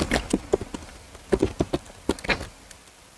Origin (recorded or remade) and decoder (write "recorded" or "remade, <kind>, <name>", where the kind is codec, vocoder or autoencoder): recorded